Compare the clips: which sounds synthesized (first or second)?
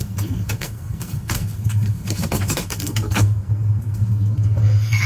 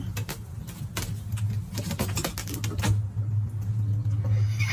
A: first